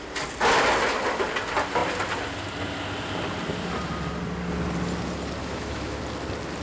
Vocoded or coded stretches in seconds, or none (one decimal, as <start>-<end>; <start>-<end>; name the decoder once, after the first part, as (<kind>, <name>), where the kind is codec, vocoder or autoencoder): 5.4-6.0 (autoencoder, DAC-VAE)